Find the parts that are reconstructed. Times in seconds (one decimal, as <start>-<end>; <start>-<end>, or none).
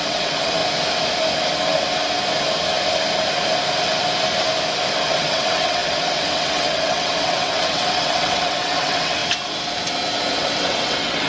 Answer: 0.0-0.6; 5.1-9.2; 10.3-11.3